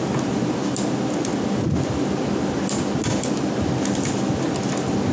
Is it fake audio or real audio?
real